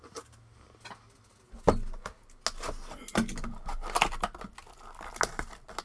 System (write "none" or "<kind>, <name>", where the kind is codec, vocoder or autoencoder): none